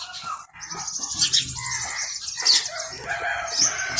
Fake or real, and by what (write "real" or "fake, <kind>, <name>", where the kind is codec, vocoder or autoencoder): real